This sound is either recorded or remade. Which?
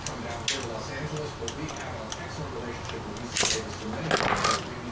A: recorded